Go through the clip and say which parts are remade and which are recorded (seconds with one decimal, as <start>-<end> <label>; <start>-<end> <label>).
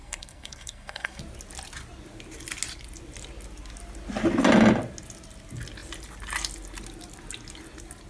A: 0.0-1.2 remade; 1.2-8.1 recorded